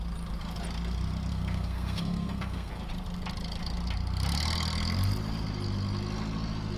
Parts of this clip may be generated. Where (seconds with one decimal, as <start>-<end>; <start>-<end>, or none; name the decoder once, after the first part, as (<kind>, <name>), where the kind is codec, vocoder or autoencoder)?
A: 1.3-2.7 (codec, SNAC)